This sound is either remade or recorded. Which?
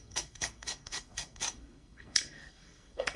remade